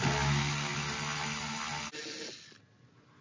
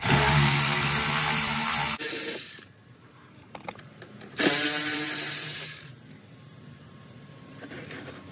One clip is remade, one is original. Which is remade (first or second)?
second